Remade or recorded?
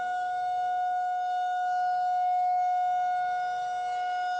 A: remade